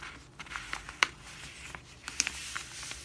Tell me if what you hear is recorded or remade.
recorded